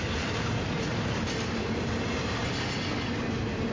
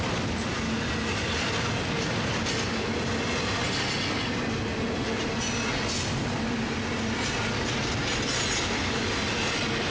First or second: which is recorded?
second